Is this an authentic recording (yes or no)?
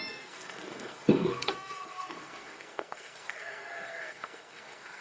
no